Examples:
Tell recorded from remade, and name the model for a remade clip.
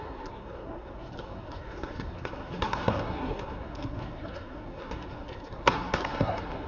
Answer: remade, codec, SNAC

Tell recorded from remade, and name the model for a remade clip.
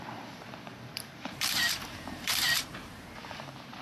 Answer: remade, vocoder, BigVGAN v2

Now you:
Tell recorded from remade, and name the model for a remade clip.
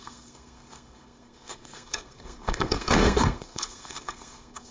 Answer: remade, codec, SNAC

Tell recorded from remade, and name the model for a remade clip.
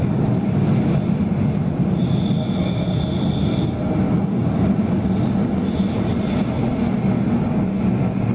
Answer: recorded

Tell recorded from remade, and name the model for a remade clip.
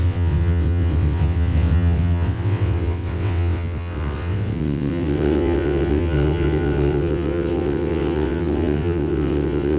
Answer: remade, vocoder, WaveNeXt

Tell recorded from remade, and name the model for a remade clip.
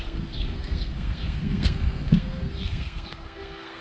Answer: remade, codec, SNAC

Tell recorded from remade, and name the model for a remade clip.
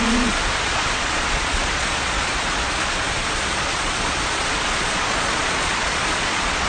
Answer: remade, vocoder, Vocos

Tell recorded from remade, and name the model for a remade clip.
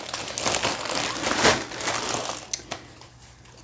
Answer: recorded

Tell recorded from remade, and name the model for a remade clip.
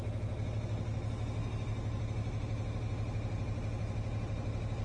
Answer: recorded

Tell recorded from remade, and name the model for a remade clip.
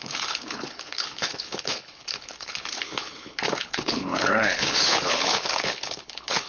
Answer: remade, codec, HILCodec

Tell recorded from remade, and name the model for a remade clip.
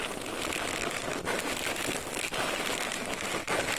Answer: recorded